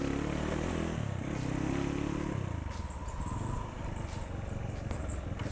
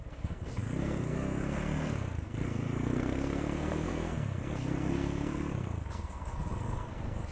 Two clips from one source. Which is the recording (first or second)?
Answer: first